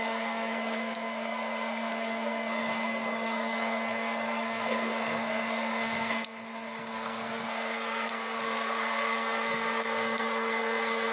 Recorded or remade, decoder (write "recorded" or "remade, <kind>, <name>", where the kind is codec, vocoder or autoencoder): remade, codec, SNAC